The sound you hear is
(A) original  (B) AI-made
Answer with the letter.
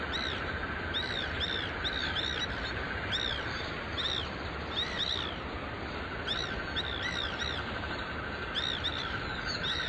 A